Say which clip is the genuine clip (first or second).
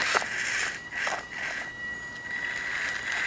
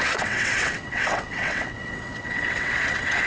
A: first